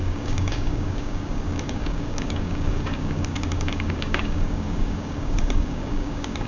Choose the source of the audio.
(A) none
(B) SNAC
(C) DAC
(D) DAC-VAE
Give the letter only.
C